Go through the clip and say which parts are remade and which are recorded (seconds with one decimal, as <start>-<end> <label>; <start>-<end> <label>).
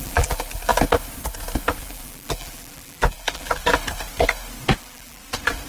0.0-0.7 remade; 0.7-1.8 recorded; 1.8-3.6 remade; 3.6-4.8 recorded; 4.8-5.2 remade; 5.2-5.7 recorded